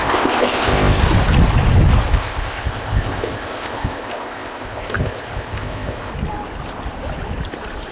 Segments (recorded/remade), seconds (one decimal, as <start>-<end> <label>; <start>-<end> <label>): 0.0-1.0 remade; 1.0-2.1 recorded; 2.1-6.1 remade; 6.1-7.9 recorded